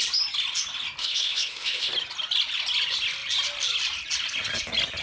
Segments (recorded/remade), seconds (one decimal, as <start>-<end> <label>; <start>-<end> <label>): 0.0-1.0 recorded; 1.0-1.9 remade; 1.9-5.0 recorded